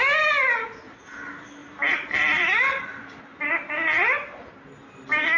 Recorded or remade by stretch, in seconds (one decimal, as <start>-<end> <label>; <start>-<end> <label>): 0.0-1.6 recorded; 1.6-3.5 remade; 3.5-5.4 recorded